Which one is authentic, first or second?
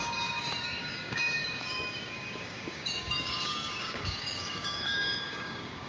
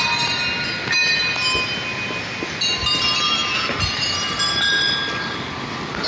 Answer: second